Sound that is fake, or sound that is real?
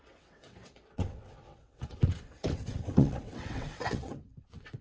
fake